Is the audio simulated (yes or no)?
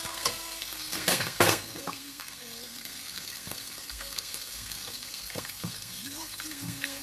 yes